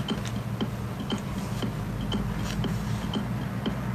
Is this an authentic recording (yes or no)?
yes